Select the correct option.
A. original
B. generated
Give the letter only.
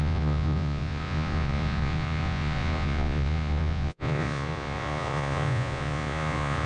B